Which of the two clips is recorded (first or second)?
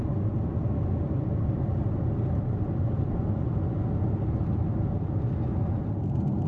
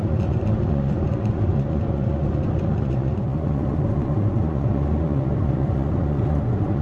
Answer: first